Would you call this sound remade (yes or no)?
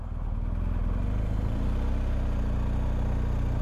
no